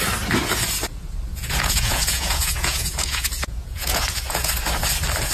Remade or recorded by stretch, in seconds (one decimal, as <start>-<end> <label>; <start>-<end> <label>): 0.0-1.3 recorded; 1.3-4.5 remade; 4.5-5.3 recorded